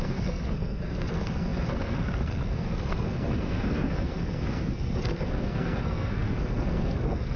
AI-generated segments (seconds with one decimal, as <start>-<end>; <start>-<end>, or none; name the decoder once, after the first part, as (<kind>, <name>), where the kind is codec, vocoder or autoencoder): 0.0-7.4 (codec, SNAC)